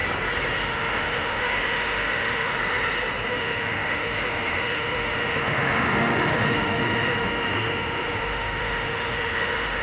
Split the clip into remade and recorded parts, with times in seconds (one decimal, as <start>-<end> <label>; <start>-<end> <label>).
0.0-0.6 recorded; 0.6-2.5 remade; 2.5-3.3 recorded; 3.3-9.8 remade